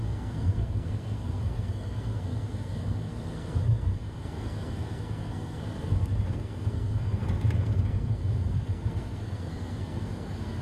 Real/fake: fake